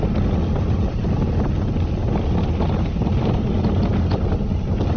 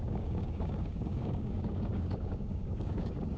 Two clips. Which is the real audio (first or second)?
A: first